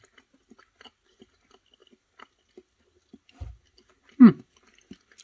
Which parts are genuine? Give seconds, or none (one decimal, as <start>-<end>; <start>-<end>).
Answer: 0.0-5.2

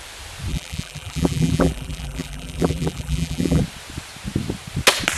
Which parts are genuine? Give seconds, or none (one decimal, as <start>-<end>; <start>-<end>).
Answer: 0.0-0.5; 3.6-5.2

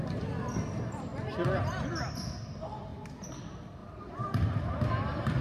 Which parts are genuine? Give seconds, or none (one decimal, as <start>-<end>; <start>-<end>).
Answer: 0.0-2.9; 3.4-3.8; 4.9-5.4

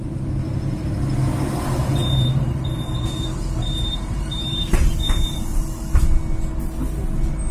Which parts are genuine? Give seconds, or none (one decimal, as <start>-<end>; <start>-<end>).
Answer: 0.0-1.9; 5.6-7.5

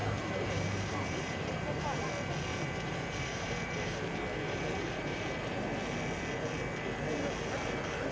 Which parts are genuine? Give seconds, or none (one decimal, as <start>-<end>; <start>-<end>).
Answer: 2.1-2.5; 5.7-8.1